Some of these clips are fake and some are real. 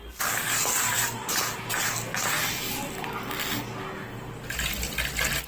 real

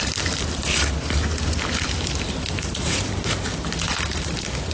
real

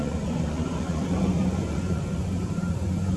fake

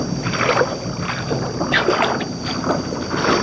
real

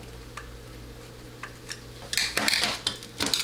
real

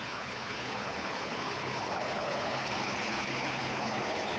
fake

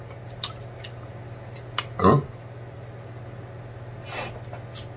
real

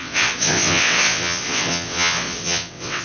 fake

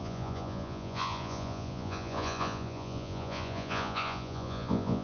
fake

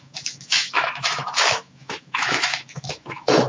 fake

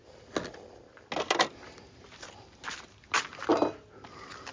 real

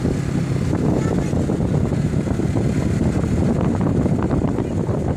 real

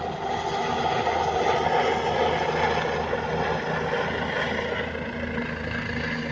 real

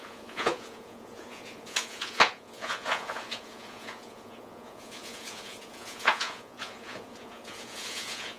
fake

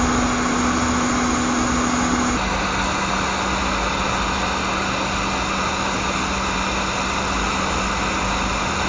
real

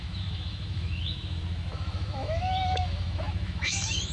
fake